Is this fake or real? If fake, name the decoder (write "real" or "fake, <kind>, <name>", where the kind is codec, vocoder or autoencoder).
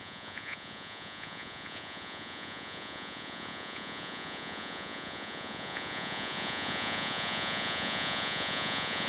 fake, vocoder, Vocos